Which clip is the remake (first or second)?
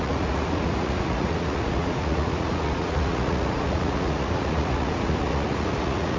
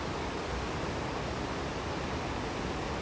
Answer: first